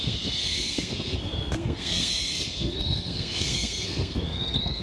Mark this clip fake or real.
fake